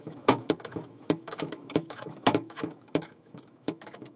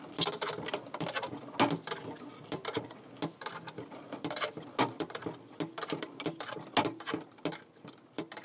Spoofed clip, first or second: first